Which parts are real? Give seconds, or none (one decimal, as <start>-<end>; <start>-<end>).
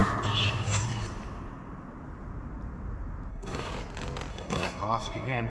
0.0-0.6; 1.0-3.3; 3.7-4.3